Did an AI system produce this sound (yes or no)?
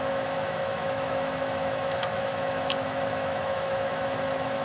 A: yes